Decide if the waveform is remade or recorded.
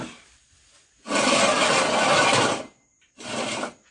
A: recorded